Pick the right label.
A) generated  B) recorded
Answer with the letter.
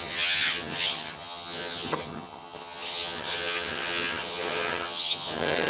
A